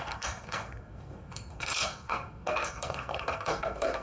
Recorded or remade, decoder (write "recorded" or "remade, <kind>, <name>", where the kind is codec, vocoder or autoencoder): remade, codec, SNAC